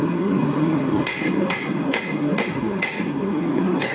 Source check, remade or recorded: remade